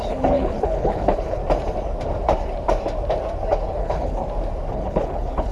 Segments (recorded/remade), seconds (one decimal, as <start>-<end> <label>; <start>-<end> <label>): 0.0-1.4 remade; 1.4-3.8 recorded; 3.8-4.2 remade; 4.2-4.7 recorded; 4.7-5.5 remade